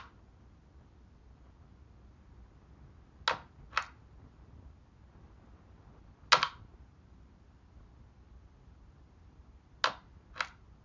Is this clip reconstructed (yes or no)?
no